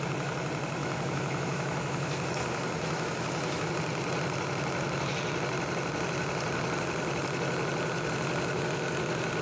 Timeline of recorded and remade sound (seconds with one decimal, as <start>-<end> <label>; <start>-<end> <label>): 0.0-0.8 recorded; 0.8-3.7 remade; 3.7-9.4 recorded